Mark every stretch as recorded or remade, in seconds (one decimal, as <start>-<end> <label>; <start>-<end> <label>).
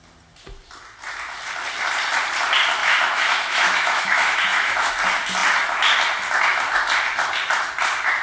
0.0-2.8 recorded; 2.8-4.9 remade; 4.9-8.2 recorded